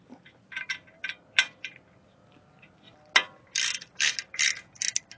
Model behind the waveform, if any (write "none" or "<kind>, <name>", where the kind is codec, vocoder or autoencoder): none